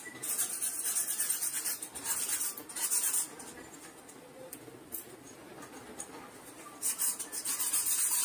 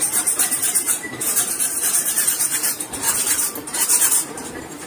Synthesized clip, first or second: second